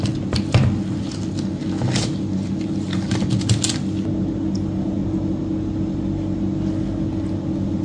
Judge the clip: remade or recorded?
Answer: recorded